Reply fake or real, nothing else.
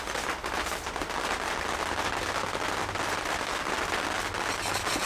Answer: real